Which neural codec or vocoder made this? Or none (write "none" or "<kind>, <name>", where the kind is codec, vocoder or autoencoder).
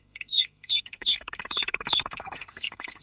codec, SNAC